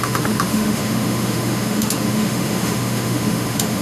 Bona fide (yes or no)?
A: no